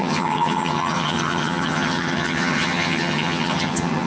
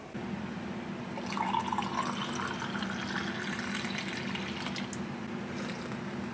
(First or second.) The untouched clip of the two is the second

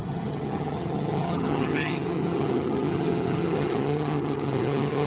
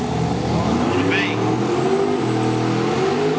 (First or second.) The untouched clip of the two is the second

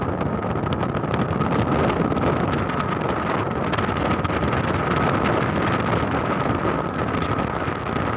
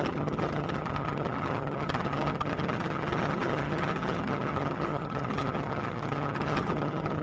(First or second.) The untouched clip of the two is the first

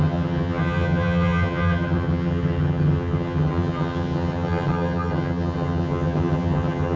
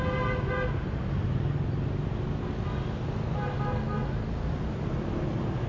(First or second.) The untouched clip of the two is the second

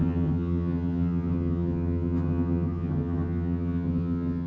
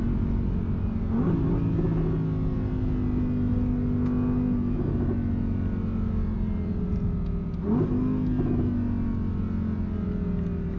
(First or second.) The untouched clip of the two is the second